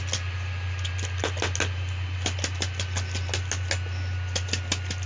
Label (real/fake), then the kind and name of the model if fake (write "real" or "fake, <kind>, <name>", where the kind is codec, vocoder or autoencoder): real